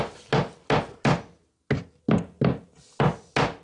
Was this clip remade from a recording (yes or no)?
no